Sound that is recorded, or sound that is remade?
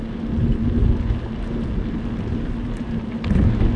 recorded